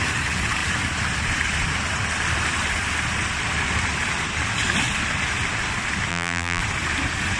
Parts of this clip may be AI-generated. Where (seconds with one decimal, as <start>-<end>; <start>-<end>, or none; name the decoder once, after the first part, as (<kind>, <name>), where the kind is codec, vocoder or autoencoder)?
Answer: 6.1-6.6 (vocoder, BigVGAN v2)